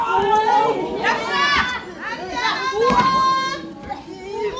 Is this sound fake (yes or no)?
no